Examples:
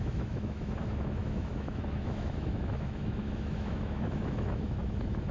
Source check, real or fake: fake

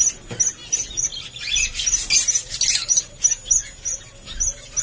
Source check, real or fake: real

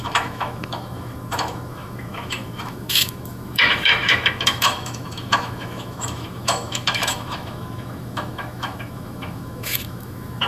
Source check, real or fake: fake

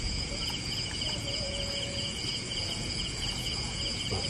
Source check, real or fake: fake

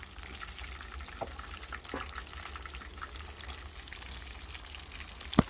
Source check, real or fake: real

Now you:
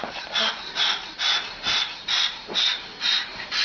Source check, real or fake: real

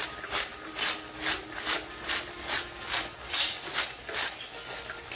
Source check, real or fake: real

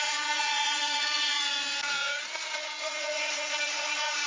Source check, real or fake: fake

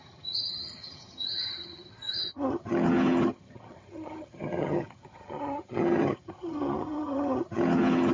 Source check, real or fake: fake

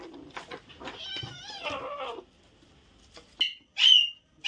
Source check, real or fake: real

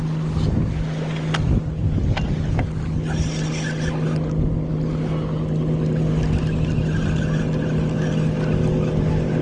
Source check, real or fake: real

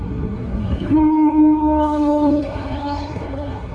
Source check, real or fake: fake